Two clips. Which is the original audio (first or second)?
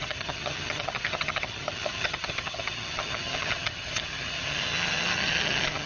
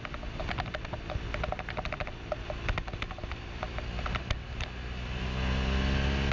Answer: second